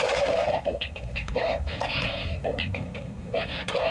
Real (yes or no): no